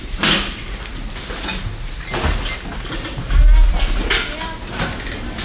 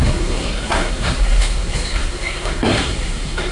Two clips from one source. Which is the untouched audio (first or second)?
first